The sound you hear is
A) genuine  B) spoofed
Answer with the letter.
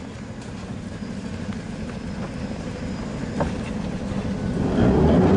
A